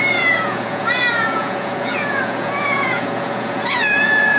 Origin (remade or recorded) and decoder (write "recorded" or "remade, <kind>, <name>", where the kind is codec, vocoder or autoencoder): remade, vocoder, Vocos